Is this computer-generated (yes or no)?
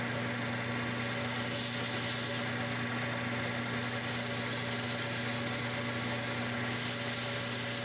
no